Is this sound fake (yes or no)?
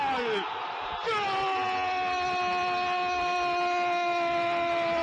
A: no